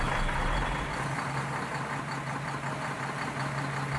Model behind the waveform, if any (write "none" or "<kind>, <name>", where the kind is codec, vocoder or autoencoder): none